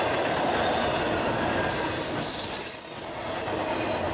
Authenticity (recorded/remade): recorded